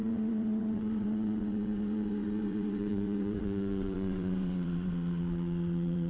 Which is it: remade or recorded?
remade